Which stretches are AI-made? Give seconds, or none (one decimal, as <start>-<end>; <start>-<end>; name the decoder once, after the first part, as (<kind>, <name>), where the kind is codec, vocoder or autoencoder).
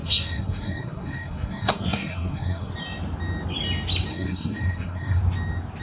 0.0-2.7 (codec, SNAC); 4.1-5.2